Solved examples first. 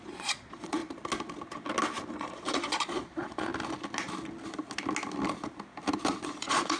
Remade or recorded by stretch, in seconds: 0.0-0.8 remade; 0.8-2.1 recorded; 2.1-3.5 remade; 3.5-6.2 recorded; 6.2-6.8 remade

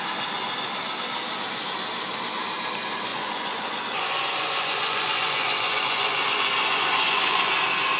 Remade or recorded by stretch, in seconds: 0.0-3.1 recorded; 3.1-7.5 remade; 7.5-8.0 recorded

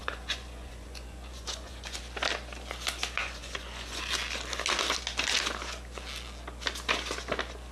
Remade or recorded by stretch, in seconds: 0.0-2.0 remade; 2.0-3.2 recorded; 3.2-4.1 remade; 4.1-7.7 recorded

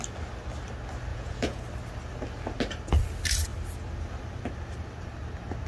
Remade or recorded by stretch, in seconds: 0.0-1.1 recorded; 1.1-1.6 remade; 1.6-5.7 recorded

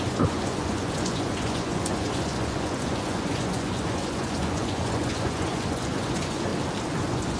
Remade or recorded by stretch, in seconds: 0.0-6.5 remade; 6.5-7.0 recorded; 7.0-7.4 remade

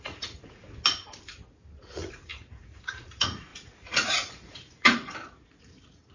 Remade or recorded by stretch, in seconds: 0.0-0.6 remade; 0.6-1.8 recorded; 1.8-6.1 remade

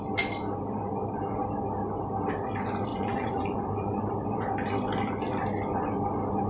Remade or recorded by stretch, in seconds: 0.0-2.9 recorded; 2.9-4.1 remade; 4.1-6.5 recorded